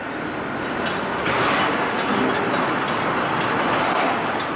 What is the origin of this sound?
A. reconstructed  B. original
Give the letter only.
B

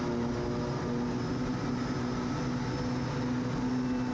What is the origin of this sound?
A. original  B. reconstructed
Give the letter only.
A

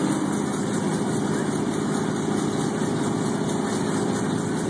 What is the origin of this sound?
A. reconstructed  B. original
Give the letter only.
B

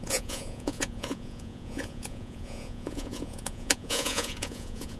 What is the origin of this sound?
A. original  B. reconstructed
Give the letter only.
B